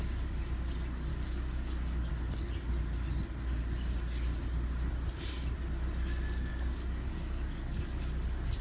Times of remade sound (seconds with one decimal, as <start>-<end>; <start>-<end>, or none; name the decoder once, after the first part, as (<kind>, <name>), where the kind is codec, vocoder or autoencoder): 1.1-2.1 (codec, DAC); 6.5-8.0